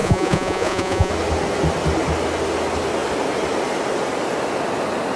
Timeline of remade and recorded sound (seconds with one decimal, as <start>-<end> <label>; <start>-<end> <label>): 0.0-1.1 remade; 1.1-5.2 recorded